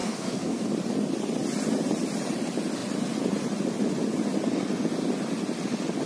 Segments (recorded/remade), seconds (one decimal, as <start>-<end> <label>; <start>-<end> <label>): 0.0-0.6 remade; 0.6-6.1 recorded